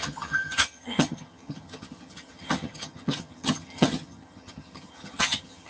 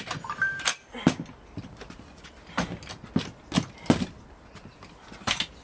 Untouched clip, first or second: second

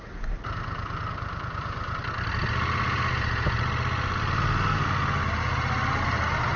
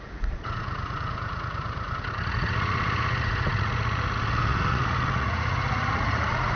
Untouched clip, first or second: first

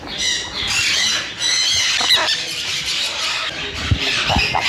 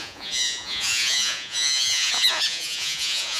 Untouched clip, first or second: first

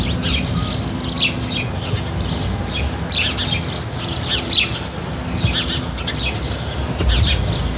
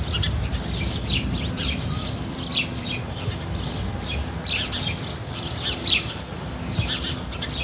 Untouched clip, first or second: first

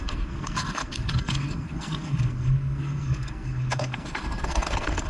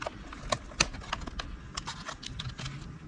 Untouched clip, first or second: second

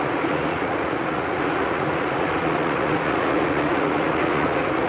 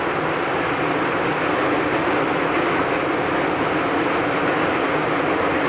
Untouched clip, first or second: second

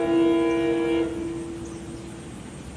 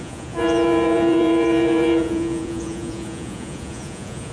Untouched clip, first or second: first